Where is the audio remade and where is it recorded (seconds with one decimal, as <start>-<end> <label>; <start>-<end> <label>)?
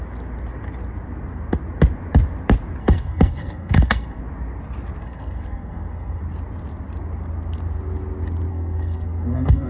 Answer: 0.0-2.8 recorded; 2.8-4.2 remade; 4.2-5.0 recorded; 5.0-6.2 remade; 6.2-8.5 recorded; 8.5-9.7 remade